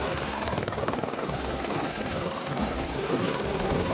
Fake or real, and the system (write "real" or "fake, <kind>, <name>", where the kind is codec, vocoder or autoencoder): fake, codec, SNAC